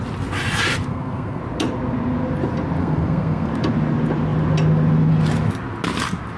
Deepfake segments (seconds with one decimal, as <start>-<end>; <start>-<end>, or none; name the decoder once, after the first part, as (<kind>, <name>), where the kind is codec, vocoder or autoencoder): 0.9-1.4 (codec, SNAC); 2.8-3.5